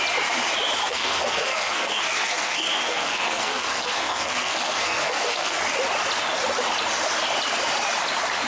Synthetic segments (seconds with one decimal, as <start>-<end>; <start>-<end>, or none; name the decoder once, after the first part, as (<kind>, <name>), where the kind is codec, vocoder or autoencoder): 0.8-5.6 (codec, SNAC)